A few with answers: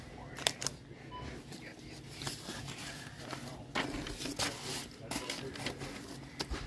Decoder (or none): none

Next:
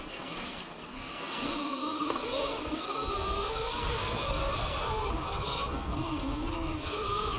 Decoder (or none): codec, SNAC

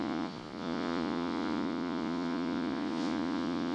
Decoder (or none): vocoder, Vocos